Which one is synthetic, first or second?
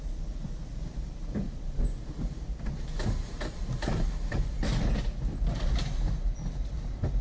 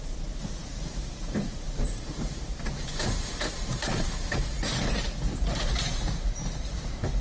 second